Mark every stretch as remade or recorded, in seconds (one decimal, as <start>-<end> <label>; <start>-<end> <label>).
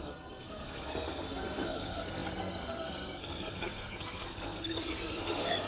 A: 0.0-5.7 remade